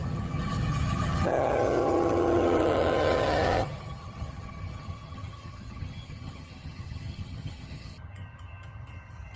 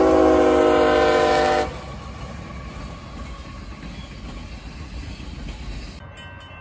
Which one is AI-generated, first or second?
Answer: first